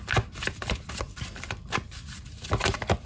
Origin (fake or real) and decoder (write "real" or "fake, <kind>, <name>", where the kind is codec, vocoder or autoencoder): real